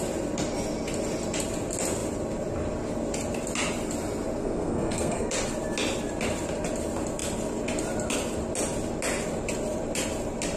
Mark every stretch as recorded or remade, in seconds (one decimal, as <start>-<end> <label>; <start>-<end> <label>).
0.0-4.4 recorded; 4.4-5.3 remade; 5.3-10.6 recorded